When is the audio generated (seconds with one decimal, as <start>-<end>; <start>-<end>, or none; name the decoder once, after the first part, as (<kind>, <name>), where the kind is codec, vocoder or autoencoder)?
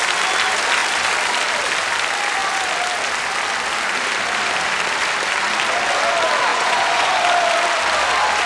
6.5-7.1 (vocoder, Vocos)